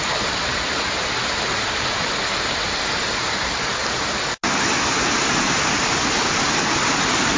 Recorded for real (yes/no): yes